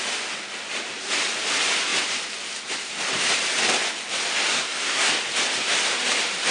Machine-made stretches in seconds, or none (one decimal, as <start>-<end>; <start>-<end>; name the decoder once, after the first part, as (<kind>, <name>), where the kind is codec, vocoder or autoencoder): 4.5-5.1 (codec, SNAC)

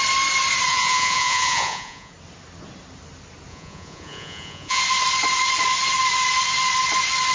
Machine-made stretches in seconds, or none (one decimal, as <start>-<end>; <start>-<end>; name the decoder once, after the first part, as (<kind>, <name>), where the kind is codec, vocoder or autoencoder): 0.7-2.1 (vocoder, Vocos); 3.5-4.8

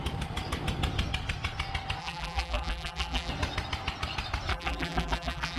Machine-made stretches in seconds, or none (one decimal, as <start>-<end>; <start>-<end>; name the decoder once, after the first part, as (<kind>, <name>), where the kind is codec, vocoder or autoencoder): 2.0-3.3 (vocoder, BigVGAN v2); 4.5-5.6